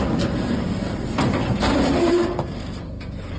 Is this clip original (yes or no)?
no